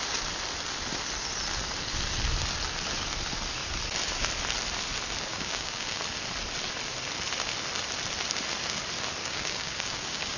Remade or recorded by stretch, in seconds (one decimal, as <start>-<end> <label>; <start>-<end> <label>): 0.0-5.3 recorded; 5.3-6.0 remade; 6.0-9.2 recorded; 9.2-10.4 remade